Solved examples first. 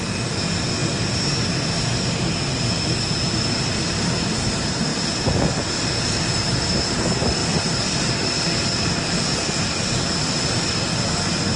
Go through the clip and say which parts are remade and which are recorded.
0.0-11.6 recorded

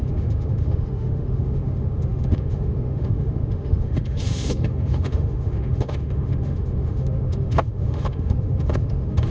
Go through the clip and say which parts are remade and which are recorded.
0.0-9.3 remade

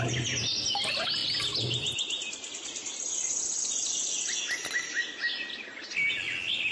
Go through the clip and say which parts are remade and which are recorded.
0.0-6.7 recorded

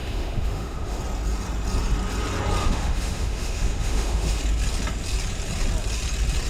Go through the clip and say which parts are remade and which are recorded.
0.0-1.0 remade; 1.0-2.6 recorded; 2.6-4.4 remade; 4.4-6.5 recorded

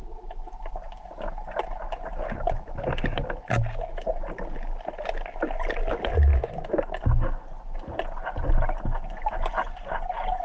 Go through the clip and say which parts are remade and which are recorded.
0.0-6.3 recorded; 6.3-7.0 remade; 7.0-10.4 recorded

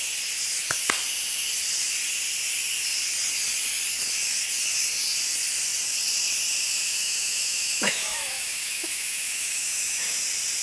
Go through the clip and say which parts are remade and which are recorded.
0.0-6.9 recorded; 6.9-10.2 remade; 10.2-10.6 recorded

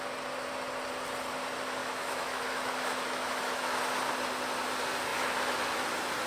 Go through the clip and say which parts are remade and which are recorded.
0.0-1.8 recorded; 1.8-3.8 remade; 3.8-6.3 recorded

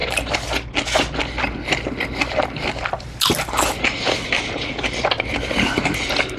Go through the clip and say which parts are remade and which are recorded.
0.0-6.4 recorded